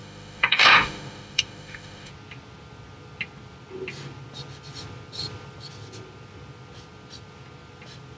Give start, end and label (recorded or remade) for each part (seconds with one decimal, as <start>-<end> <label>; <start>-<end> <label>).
0.0-2.1 remade; 2.1-8.2 recorded